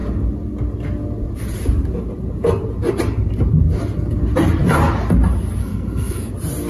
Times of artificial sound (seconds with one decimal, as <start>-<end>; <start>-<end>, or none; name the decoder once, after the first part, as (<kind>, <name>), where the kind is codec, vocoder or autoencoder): 5.6-6.3 (codec, SNAC)